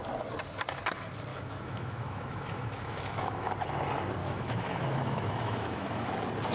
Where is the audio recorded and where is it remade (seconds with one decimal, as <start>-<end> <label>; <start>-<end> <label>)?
0.0-1.3 recorded; 1.3-3.5 remade; 3.5-4.2 recorded; 4.2-6.1 remade; 6.1-6.5 recorded